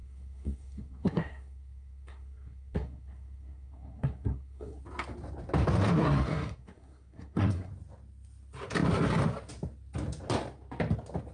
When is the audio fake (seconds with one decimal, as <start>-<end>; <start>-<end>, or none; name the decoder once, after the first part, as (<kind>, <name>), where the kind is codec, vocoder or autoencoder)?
0.0-4.8 (codec, SNAC); 6.0-7.7